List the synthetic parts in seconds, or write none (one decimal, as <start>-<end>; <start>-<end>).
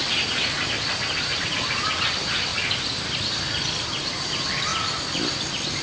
none